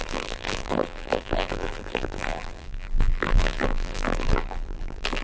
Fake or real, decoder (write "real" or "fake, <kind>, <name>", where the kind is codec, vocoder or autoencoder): fake, vocoder, BigVGAN v2